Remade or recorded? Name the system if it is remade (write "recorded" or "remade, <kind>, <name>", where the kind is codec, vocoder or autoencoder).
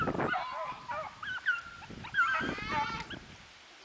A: recorded